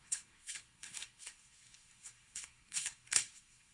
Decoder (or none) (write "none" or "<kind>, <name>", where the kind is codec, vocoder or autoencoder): codec, SNAC